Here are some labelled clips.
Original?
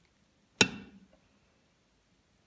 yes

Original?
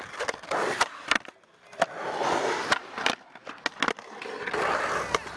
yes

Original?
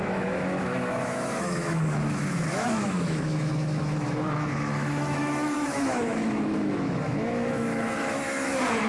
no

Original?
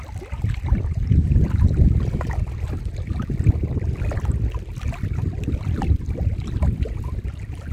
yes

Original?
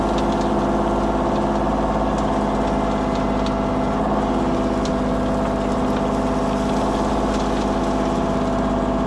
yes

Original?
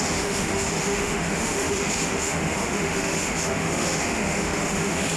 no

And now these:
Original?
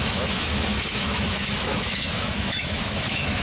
no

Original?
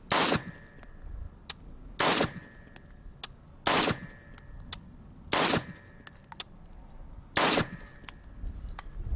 yes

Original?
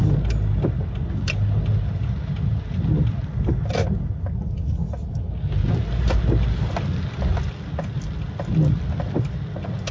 yes